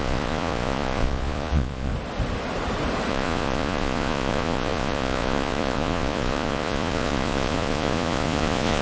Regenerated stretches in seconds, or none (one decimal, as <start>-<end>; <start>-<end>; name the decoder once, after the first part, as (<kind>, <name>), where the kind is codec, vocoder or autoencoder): 0.0-1.9 (vocoder, Vocos); 3.1-8.8